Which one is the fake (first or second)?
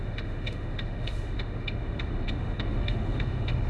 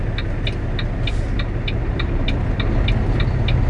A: first